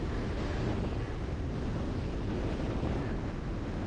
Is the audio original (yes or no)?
yes